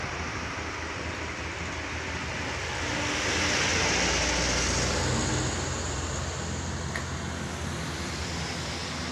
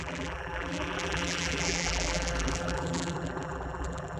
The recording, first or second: first